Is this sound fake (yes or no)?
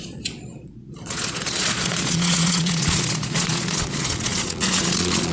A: yes